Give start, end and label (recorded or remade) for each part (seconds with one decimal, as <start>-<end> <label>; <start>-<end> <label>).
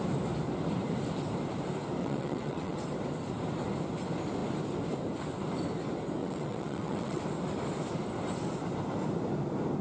0.0-2.0 recorded; 2.0-2.8 remade; 2.8-6.2 recorded; 6.2-7.2 remade; 7.2-9.8 recorded